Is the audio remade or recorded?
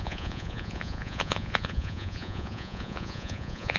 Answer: remade